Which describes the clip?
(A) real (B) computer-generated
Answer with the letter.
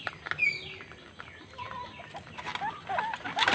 A